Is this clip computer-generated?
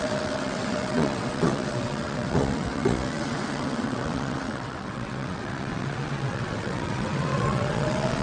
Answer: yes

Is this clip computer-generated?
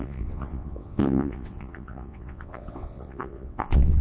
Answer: yes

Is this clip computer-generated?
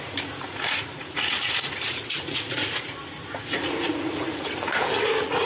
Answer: yes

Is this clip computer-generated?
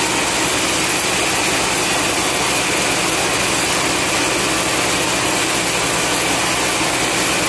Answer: no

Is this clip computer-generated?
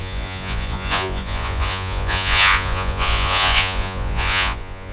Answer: yes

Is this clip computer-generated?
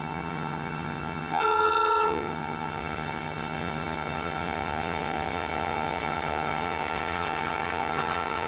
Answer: yes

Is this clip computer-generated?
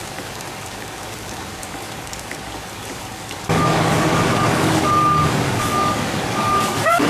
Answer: yes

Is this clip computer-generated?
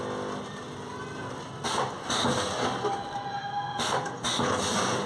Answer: no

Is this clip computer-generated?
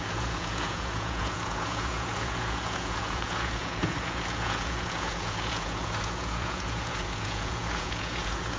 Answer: yes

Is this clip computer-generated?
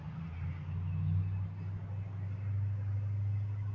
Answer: no